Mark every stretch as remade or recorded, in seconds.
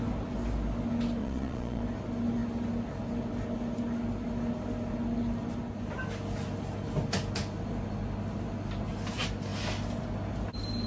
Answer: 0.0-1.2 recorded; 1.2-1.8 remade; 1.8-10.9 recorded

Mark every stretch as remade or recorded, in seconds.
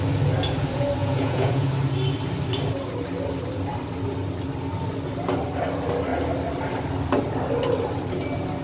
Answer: 0.0-1.0 recorded; 1.0-1.7 remade; 1.7-8.6 recorded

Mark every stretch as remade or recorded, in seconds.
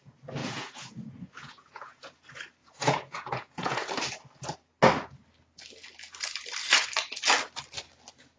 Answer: 0.0-0.4 recorded; 0.4-2.1 remade; 2.1-2.6 recorded; 2.6-3.9 remade; 3.9-8.4 recorded